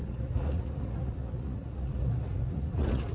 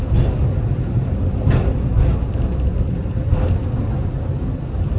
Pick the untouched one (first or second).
second